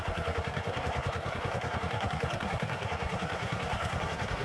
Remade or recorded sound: remade